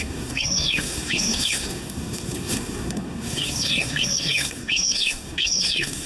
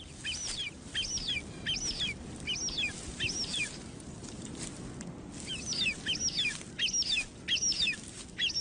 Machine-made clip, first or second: first